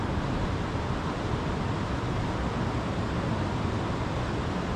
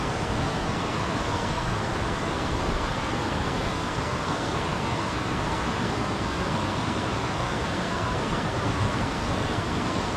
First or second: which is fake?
second